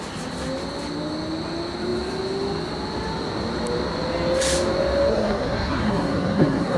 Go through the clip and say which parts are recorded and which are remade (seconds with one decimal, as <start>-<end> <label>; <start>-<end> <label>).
0.0-5.1 recorded; 5.1-6.8 remade